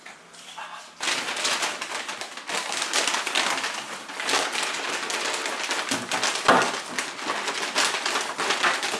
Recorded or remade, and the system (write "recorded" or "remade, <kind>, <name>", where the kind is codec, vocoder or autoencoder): recorded